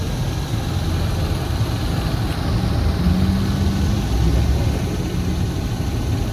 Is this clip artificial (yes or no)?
no